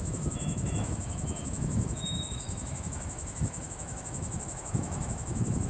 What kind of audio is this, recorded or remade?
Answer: remade